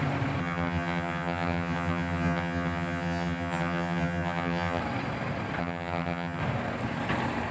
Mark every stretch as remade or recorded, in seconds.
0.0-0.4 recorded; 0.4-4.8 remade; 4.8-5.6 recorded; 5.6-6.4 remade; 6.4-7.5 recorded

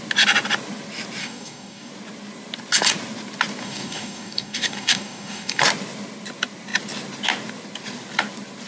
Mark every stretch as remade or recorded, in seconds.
0.0-1.2 recorded; 1.2-1.9 remade; 1.9-3.6 recorded; 3.6-5.6 remade; 5.6-8.7 recorded

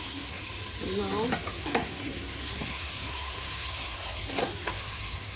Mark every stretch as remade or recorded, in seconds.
0.0-0.4 remade; 0.4-1.6 recorded; 1.6-5.4 remade

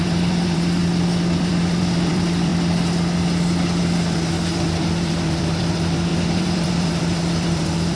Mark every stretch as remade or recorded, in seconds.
0.0-0.8 remade; 0.8-1.4 recorded; 1.4-2.5 remade; 2.5-4.4 recorded; 4.4-8.0 remade

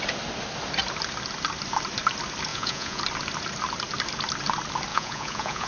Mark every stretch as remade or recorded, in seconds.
0.0-2.5 recorded; 2.5-3.0 remade; 3.0-4.9 recorded; 4.9-5.7 remade

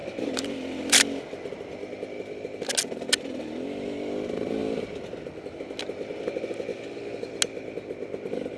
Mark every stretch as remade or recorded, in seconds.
0.0-1.5 remade; 1.5-6.7 recorded; 6.7-7.4 remade; 7.4-8.6 recorded

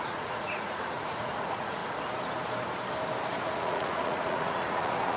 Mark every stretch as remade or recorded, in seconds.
0.0-1.8 remade; 1.8-3.4 recorded; 3.4-5.2 remade

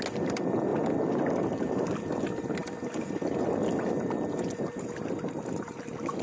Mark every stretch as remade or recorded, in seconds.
0.0-6.2 recorded